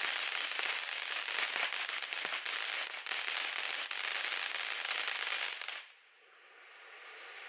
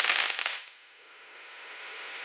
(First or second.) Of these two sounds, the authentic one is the first